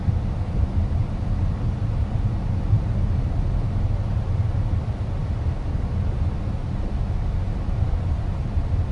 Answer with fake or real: real